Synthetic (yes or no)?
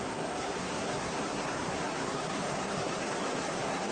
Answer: yes